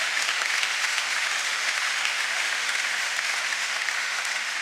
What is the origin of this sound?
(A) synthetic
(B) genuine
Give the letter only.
A